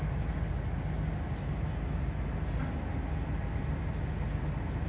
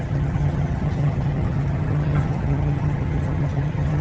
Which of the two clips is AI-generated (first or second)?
second